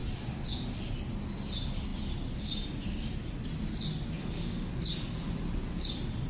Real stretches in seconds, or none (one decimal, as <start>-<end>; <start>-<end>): 0.0-4.2; 4.7-6.3